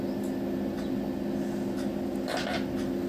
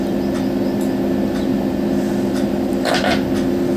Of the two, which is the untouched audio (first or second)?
first